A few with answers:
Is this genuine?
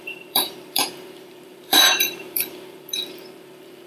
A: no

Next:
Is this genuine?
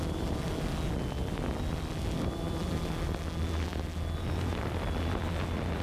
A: yes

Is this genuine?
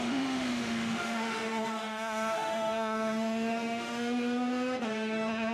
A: no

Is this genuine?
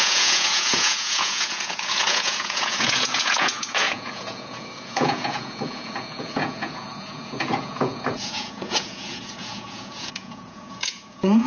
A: no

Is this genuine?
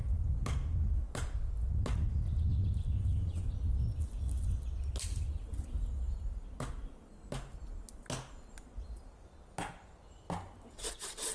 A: yes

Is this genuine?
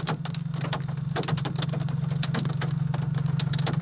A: yes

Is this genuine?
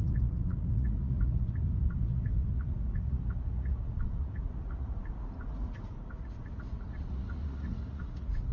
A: no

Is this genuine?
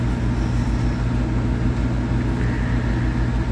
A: yes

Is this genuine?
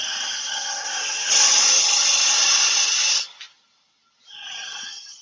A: yes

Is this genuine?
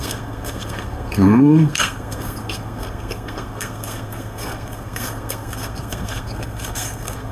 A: no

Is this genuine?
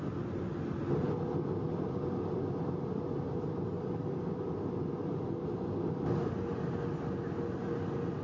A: yes